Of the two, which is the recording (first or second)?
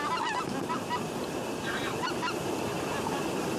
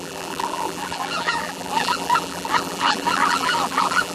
first